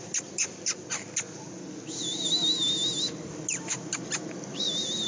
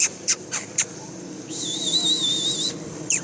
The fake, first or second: second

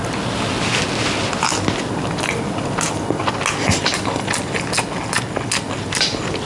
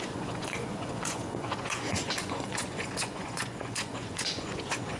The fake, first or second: second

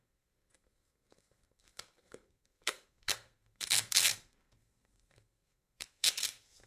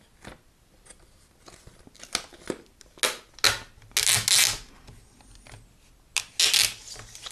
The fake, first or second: first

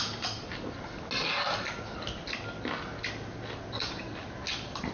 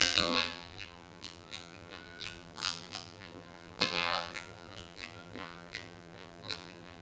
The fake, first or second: second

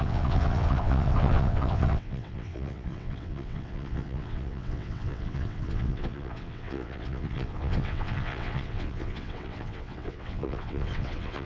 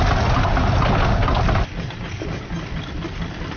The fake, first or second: first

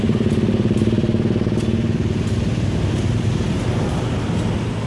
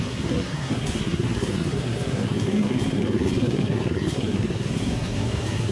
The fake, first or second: second